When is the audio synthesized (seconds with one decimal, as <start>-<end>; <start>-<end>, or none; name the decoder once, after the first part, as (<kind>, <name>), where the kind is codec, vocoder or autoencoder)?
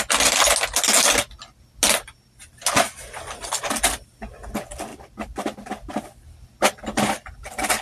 none